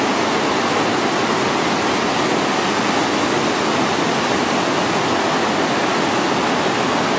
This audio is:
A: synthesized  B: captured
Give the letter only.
B